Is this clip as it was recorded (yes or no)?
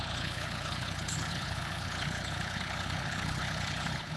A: no